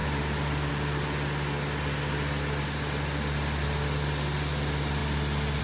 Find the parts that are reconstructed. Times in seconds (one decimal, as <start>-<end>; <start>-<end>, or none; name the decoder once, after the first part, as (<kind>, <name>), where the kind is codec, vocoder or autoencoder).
none